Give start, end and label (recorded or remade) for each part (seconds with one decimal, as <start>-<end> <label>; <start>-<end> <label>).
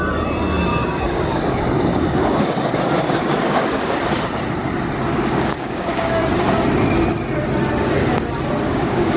0.0-0.7 recorded; 0.7-2.7 remade; 2.7-3.2 recorded; 3.2-4.0 remade; 4.0-5.1 recorded; 5.1-6.2 remade; 6.2-8.7 recorded; 8.7-9.2 remade